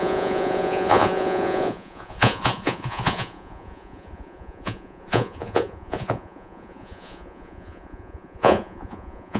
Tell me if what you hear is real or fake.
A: fake